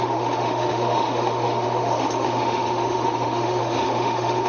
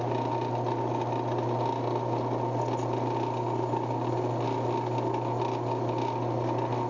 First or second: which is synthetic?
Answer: first